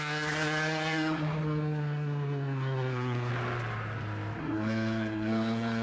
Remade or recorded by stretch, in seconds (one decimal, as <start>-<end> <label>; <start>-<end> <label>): 0.0-3.3 remade; 3.3-4.4 recorded; 4.4-5.8 remade